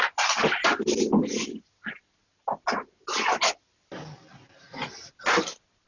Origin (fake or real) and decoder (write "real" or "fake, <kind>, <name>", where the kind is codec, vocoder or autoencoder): real